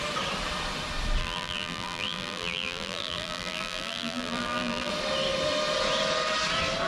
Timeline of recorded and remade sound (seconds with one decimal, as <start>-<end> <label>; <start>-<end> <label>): 0.0-1.2 recorded; 1.2-4.9 remade; 4.9-6.9 recorded